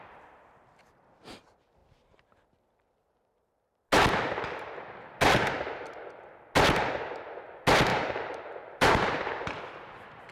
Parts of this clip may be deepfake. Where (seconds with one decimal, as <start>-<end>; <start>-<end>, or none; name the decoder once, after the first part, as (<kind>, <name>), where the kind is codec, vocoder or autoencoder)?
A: 7.9-9.6 (vocoder, BigVGAN v2)